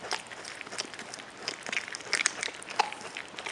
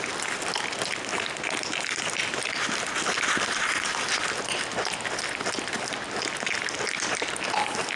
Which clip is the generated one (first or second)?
first